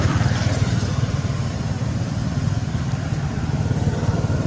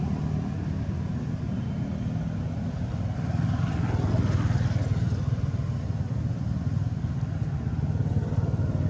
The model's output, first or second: first